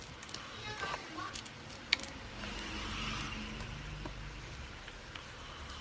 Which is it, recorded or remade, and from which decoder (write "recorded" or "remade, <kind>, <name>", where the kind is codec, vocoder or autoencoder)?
recorded